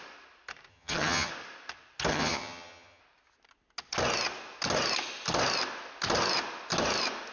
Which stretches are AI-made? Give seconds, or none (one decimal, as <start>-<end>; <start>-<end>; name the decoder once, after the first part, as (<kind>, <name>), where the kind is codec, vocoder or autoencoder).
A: 0.7-1.3 (vocoder, HiFi-GAN); 2.1-3.0